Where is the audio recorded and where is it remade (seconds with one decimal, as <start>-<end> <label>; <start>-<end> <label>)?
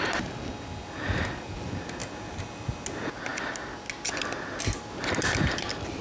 0.0-6.0 recorded